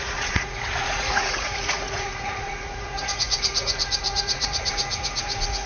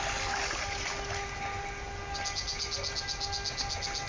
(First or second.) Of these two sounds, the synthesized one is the first